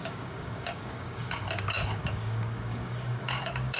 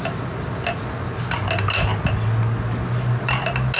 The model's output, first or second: first